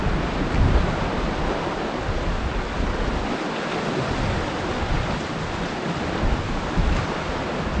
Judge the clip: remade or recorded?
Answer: recorded